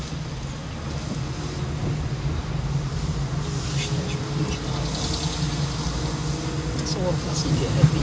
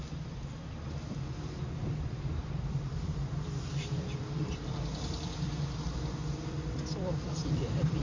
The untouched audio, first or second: first